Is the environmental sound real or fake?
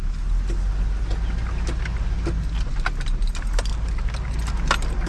real